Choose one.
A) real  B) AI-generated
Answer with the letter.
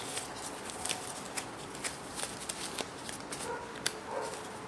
A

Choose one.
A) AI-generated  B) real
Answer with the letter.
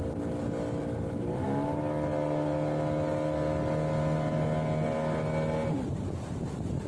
B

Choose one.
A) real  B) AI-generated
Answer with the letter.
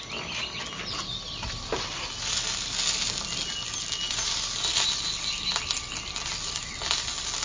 A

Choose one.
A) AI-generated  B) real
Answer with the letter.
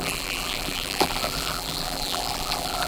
A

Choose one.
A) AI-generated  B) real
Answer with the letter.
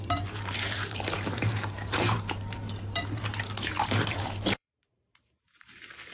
A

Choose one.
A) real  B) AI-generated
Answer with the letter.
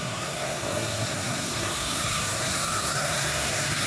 B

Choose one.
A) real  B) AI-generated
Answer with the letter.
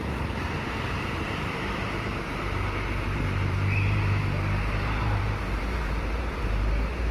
B